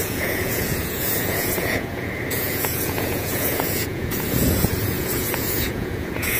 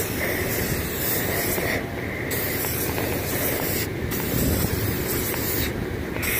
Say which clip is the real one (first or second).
second